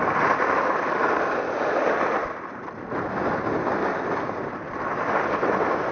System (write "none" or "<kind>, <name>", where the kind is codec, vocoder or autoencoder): none